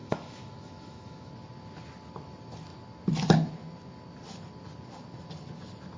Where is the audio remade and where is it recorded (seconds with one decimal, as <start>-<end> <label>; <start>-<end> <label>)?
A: 0.0-1.3 remade; 1.3-6.0 recorded